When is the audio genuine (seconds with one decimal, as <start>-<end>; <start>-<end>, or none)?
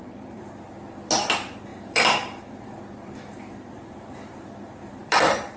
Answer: none